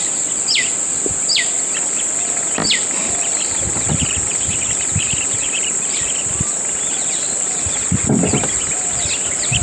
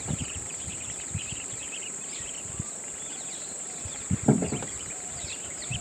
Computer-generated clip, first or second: second